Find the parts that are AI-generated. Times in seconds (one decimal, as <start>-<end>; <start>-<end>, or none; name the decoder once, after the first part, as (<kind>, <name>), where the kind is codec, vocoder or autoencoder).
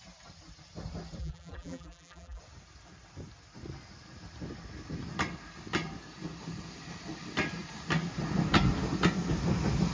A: 1.2-2.4 (vocoder, BigVGAN v2)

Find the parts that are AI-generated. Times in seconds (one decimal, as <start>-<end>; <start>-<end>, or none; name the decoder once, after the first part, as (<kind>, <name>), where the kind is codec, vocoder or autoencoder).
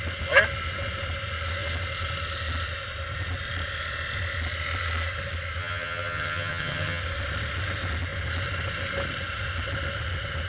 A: 5.6-7.0 (vocoder, HiFi-GAN)